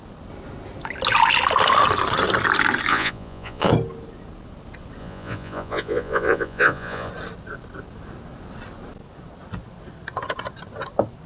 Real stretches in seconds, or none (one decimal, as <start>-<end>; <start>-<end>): 0.0-2.9; 3.7-5.0; 7.1-11.3